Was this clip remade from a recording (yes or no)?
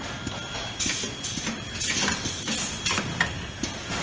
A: no